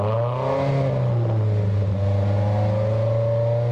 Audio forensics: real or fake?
real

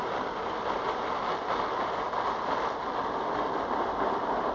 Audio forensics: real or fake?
real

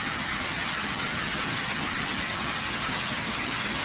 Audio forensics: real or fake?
fake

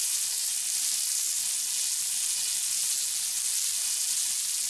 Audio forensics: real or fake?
real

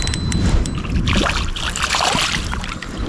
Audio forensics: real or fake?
real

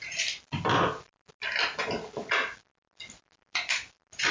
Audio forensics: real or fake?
real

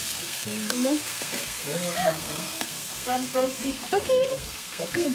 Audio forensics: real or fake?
fake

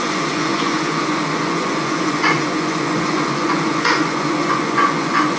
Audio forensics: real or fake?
fake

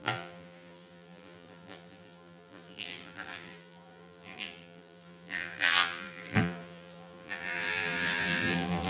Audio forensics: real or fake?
fake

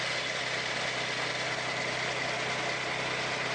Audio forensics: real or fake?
real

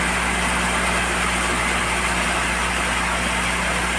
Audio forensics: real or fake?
real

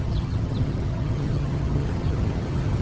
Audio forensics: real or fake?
fake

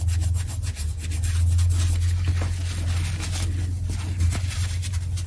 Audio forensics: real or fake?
real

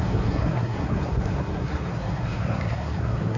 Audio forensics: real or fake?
fake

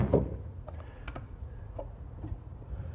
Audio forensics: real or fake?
fake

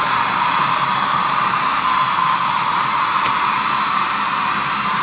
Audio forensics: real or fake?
fake